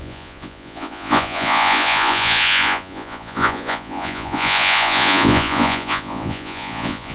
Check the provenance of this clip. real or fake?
fake